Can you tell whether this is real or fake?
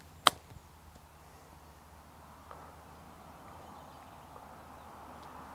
real